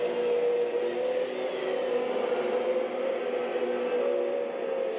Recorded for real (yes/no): yes